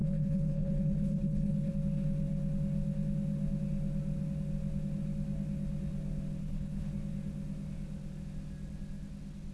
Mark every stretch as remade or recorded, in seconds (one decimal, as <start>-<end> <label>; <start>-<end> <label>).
0.0-1.7 remade; 1.7-6.4 recorded; 6.4-6.9 remade; 6.9-9.5 recorded